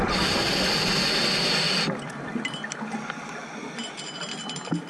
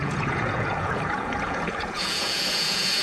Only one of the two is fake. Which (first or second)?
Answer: second